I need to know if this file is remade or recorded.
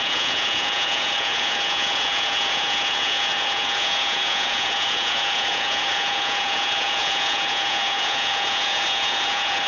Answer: remade